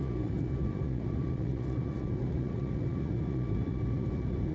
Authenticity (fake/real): fake